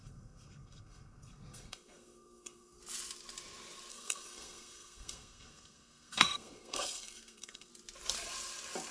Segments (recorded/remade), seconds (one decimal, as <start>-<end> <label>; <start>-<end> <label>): 0.0-2.8 remade; 2.8-3.9 recorded; 3.9-7.7 remade; 7.7-8.9 recorded

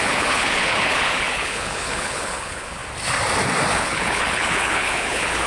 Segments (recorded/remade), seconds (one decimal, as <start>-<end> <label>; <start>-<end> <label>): 0.0-2.8 remade; 2.8-3.7 recorded; 3.7-5.5 remade

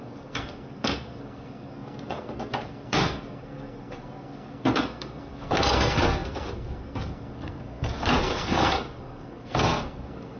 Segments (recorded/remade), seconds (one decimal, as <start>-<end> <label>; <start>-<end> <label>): 0.0-10.4 remade